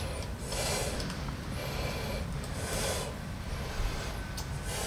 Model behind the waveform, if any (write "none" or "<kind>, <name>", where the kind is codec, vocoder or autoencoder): none